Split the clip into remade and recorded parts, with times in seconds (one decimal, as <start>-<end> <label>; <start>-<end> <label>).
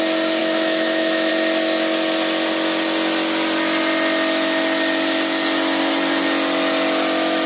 0.0-0.4 recorded; 0.4-1.3 remade; 1.3-7.5 recorded